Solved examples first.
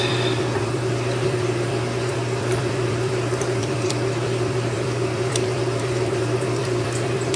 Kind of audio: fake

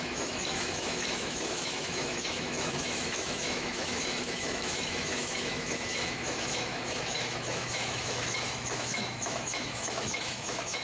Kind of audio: fake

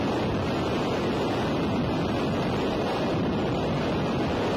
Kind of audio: real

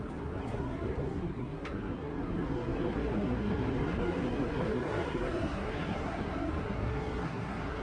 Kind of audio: fake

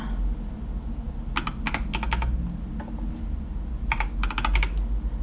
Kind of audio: real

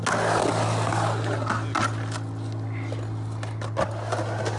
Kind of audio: real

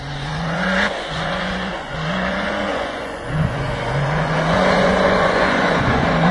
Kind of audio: fake